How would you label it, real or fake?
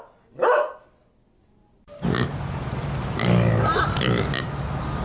real